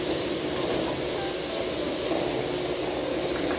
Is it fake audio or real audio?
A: real